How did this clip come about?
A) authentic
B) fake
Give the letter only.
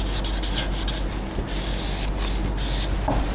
A